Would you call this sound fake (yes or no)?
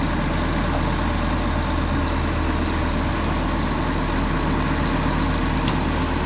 no